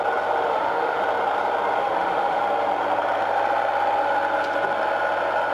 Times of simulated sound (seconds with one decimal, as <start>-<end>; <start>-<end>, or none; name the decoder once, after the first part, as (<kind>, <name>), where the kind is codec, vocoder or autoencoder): 0.5-1.0 (autoencoder, DAC-VAE); 1.8-2.4